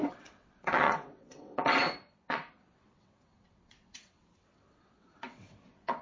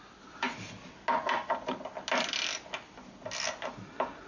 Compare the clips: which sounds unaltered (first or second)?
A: second